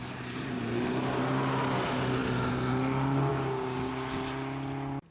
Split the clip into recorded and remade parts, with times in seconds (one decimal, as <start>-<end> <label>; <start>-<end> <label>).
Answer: 0.0-3.3 recorded; 3.3-3.9 remade; 3.9-5.1 recorded

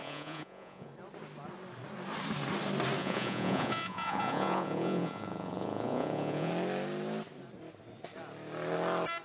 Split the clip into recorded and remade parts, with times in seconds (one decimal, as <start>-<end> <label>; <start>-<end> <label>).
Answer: 0.0-0.9 remade; 0.9-3.0 recorded; 3.0-6.5 remade; 6.5-9.2 recorded

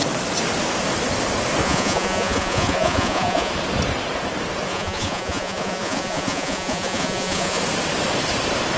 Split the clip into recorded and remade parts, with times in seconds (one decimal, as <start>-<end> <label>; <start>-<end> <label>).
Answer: 0.0-1.6 recorded; 1.6-3.5 remade; 3.5-4.7 recorded; 4.7-7.6 remade; 7.6-8.8 recorded

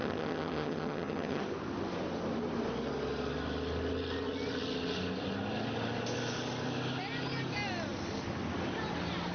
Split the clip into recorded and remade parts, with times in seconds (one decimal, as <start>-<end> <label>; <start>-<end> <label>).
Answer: 0.0-1.4 remade; 1.4-9.3 recorded

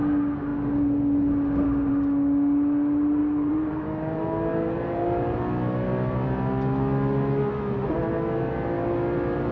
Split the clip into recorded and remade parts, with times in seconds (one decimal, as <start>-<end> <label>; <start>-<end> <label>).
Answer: 0.0-3.2 recorded; 3.2-5.4 remade; 5.4-9.5 recorded

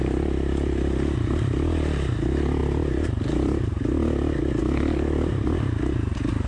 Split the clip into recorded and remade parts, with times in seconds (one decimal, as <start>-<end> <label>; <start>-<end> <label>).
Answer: 0.0-2.6 recorded; 2.6-3.7 remade; 3.7-6.5 recorded

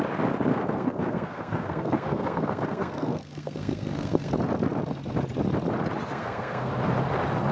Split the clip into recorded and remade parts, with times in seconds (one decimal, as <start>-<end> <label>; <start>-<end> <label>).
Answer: 0.0-0.5 recorded; 0.5-4.3 remade; 4.3-6.1 recorded; 6.1-6.7 remade; 6.7-7.5 recorded

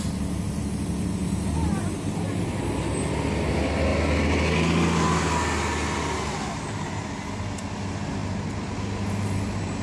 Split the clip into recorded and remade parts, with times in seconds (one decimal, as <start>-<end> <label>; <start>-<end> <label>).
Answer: 0.0-9.8 recorded